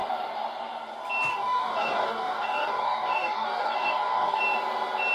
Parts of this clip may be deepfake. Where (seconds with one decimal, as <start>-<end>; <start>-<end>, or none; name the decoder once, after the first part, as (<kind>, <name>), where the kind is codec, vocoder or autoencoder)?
1.3-4.4 (codec, DAC)